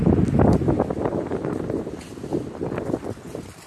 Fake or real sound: real